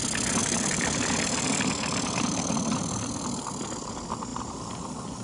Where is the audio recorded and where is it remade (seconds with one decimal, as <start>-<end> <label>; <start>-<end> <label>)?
0.0-0.4 recorded; 0.4-3.5 remade; 3.5-4.3 recorded; 4.3-4.8 remade; 4.8-5.2 recorded